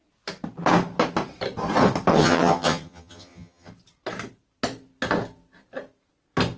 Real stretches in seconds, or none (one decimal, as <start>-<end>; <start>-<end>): 0.0-2.1; 3.7-6.6